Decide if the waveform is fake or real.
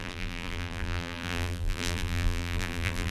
fake